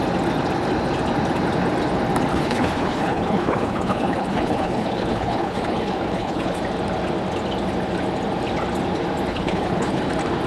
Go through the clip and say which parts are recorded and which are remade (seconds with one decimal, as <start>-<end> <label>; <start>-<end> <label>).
0.0-2.3 recorded; 2.3-6.6 remade; 6.6-9.3 recorded; 9.3-10.0 remade; 10.0-10.5 recorded